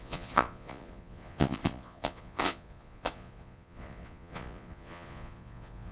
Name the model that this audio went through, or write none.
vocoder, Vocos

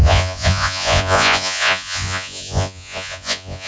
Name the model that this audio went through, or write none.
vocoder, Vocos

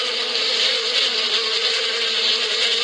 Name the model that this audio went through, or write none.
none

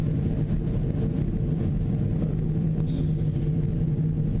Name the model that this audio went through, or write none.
none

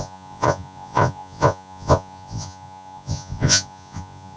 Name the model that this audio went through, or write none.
vocoder, Vocos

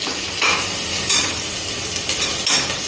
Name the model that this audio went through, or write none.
none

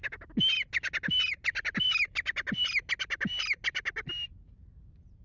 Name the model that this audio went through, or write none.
none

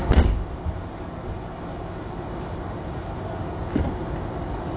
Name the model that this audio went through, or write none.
none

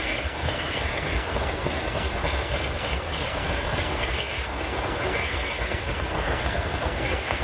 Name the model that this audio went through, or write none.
codec, SNAC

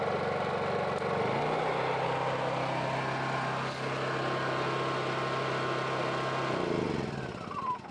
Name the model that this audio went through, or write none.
none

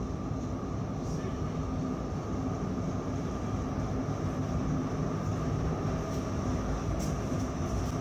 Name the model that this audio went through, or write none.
none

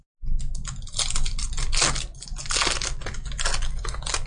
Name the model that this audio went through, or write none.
none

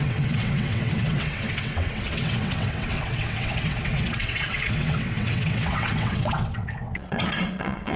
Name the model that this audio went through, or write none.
vocoder, WaveNeXt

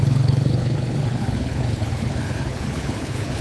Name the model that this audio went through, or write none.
codec, HILCodec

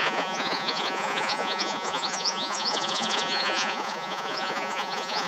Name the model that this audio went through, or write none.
vocoder, Vocos